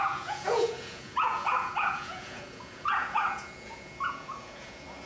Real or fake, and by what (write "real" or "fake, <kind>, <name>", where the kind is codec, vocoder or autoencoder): fake, vocoder, Vocos